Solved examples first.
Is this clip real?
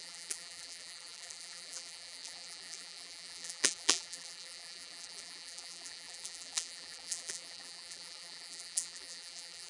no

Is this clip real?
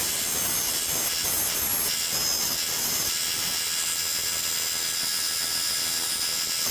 yes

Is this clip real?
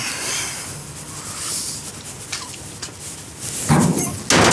yes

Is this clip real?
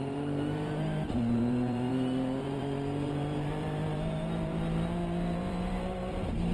no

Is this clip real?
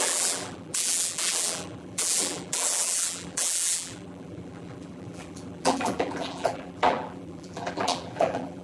no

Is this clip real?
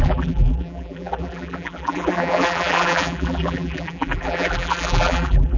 no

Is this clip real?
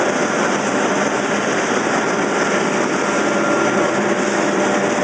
yes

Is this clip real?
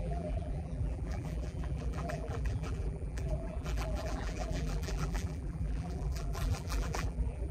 no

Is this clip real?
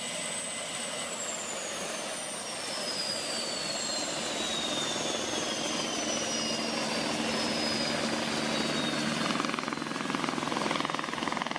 yes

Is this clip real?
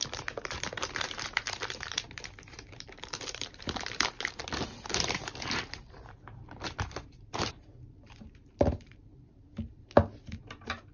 no